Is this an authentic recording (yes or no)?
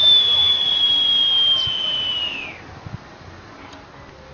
yes